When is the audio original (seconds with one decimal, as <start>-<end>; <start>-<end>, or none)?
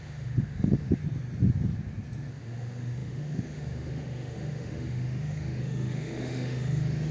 1.0-2.3